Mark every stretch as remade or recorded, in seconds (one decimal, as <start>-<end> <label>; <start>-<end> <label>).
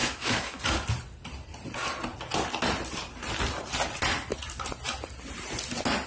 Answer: 0.0-0.6 remade; 0.6-6.1 recorded